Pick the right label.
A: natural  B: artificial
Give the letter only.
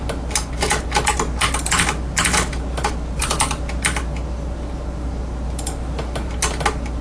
A